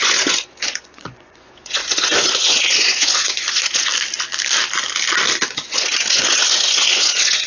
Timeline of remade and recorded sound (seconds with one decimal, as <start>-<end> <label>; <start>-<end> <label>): 0.0-3.9 remade; 3.9-5.5 recorded; 5.5-7.5 remade